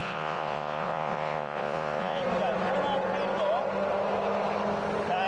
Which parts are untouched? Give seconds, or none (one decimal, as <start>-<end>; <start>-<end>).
2.2-5.3